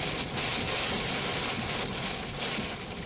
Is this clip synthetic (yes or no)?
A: no